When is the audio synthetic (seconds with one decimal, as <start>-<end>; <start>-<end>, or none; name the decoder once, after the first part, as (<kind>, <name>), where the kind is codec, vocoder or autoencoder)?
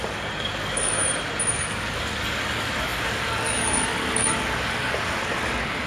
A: 0.0-1.0 (codec, DAC); 1.5-5.9